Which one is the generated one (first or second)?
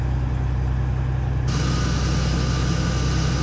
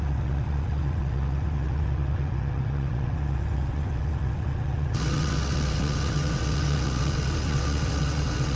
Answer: second